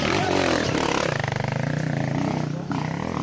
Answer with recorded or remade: recorded